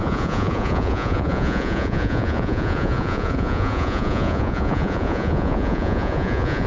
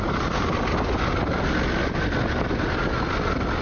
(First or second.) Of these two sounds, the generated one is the first